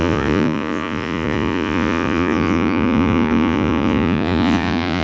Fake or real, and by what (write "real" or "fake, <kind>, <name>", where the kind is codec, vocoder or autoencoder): fake, vocoder, Vocos